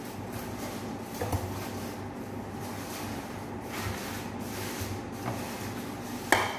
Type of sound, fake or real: real